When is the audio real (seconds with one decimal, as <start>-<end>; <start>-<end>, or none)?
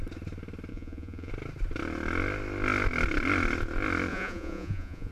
0.0-0.7; 1.3-4.1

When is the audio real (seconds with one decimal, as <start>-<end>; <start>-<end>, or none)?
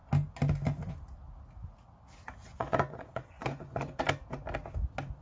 0.0-2.4; 4.0-5.2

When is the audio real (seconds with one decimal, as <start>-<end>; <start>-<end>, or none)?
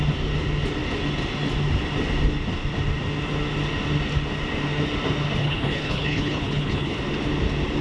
0.0-5.4; 7.0-7.8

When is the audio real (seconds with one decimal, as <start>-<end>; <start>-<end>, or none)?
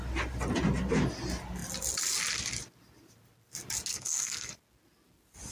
0.0-3.9; 4.5-5.5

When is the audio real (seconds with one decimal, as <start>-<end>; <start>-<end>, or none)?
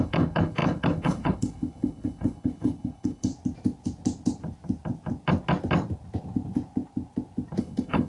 3.3-7.6